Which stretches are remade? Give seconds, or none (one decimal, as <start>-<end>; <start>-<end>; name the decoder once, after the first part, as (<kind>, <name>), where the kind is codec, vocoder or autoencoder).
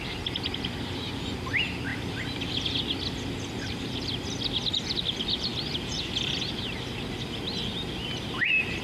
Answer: none